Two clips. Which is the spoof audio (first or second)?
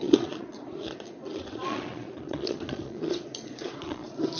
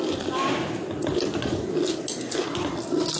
first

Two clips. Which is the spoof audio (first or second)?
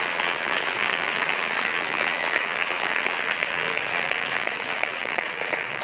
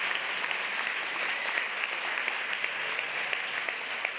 first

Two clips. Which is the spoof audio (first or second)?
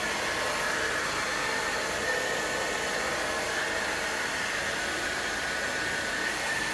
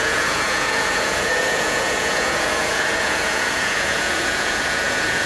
second